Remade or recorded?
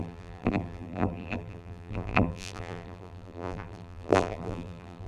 remade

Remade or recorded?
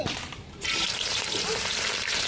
remade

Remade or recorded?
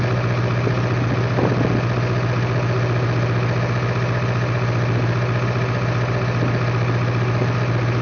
recorded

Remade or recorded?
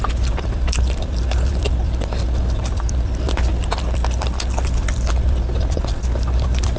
remade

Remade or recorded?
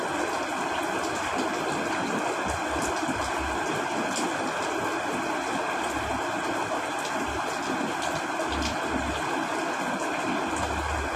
recorded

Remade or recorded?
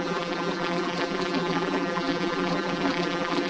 remade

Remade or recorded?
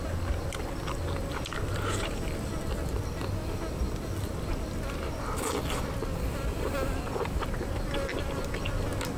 recorded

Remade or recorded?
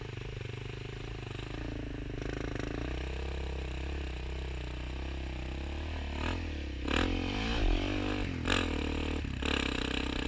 recorded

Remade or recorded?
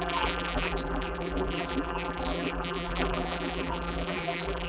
remade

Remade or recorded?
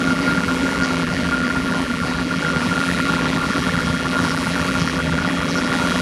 remade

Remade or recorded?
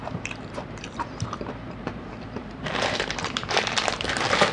remade